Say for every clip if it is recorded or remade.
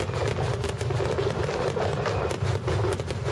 recorded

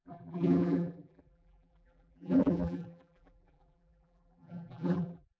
remade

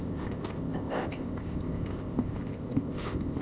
remade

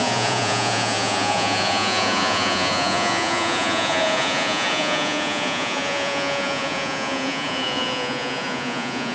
remade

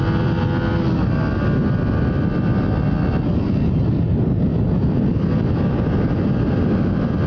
recorded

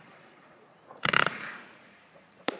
remade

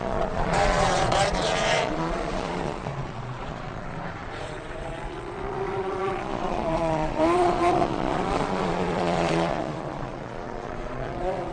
remade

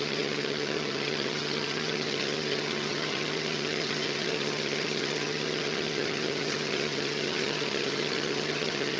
remade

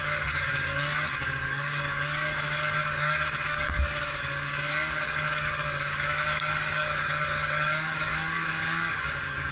remade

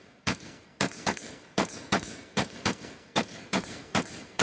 remade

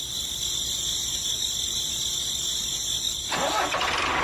recorded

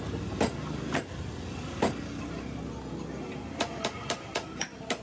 recorded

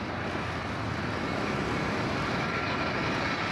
recorded